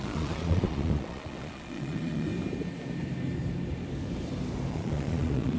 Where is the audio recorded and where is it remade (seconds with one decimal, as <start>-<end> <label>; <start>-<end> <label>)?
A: 0.0-2.3 remade; 2.3-4.7 recorded; 4.7-5.6 remade